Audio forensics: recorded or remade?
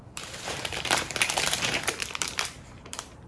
remade